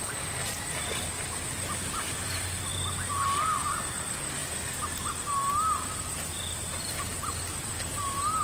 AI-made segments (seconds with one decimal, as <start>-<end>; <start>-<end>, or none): none